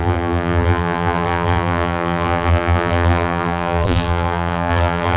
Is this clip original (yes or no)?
no